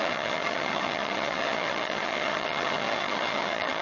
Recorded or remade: remade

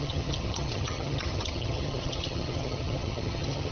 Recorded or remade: remade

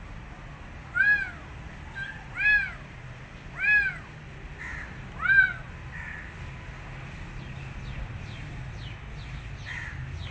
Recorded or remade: recorded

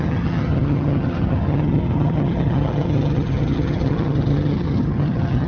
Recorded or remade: remade